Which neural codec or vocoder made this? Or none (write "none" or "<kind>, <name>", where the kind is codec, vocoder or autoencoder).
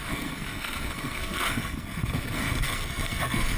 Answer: codec, SNAC